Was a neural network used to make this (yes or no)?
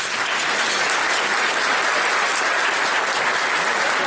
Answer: no